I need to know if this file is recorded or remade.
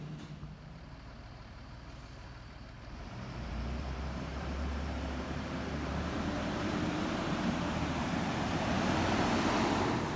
remade